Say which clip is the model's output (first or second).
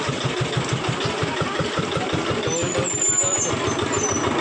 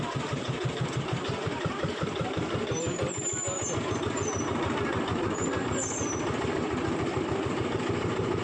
second